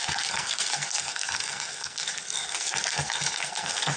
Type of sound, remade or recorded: remade